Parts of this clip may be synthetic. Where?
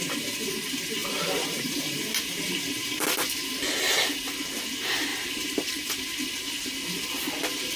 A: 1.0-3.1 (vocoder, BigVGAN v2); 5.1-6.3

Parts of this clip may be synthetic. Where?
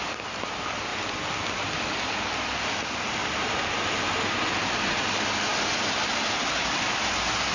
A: none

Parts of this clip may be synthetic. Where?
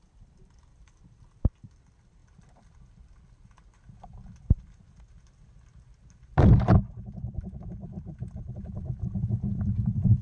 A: 0.0-2.2 (vocoder, BigVGAN v2); 6.2-10.2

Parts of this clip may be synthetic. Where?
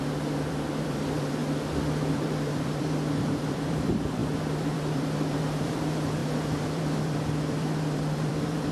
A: 0.0-1.4 (vocoder, BigVGAN v2); 2.1-8.7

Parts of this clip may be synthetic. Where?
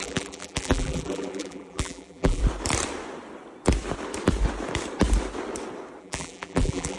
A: 0.0-2.4 (vocoder, BigVGAN v2); 6.0-7.0